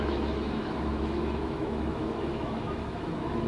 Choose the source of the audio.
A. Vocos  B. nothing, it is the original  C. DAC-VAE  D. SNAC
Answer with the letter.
C